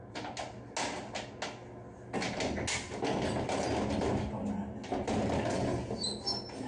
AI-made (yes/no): no